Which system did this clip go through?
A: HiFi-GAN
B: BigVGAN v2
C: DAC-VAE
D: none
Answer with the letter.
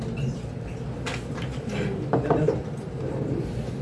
D